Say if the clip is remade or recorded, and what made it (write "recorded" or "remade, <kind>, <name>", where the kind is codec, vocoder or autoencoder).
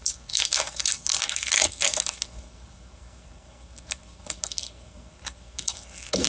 remade, codec, SNAC